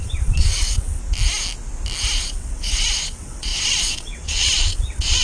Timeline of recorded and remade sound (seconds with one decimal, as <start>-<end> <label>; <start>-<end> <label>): 0.0-1.0 remade; 1.0-2.1 recorded; 2.1-5.2 remade